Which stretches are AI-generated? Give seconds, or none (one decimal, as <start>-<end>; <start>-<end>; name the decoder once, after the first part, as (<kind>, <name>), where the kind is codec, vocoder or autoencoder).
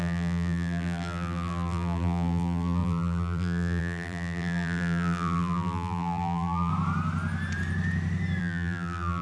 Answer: 0.0-6.7 (vocoder, BigVGAN v2); 8.4-9.2